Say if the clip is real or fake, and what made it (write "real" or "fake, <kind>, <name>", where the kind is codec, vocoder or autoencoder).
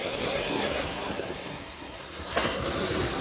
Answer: fake, codec, SNAC